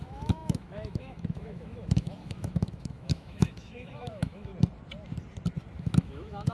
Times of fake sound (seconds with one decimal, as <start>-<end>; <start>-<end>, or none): 0.0-4.5; 5.8-6.5